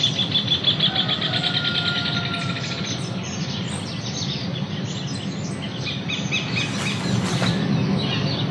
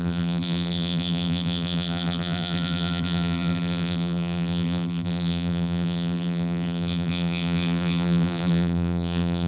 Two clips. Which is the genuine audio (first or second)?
first